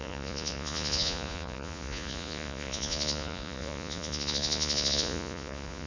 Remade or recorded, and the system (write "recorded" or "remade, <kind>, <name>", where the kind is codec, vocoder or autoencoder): remade, vocoder, Vocos